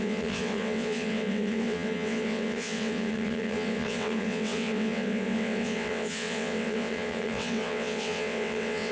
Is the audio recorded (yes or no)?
no